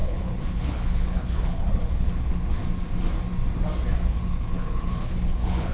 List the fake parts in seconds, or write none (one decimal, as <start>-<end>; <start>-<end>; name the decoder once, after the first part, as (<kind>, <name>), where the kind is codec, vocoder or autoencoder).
0.0-2.6 (codec, HILCodec); 3.9-5.7